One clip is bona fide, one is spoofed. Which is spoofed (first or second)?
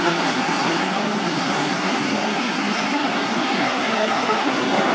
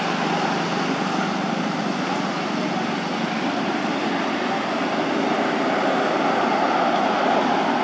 first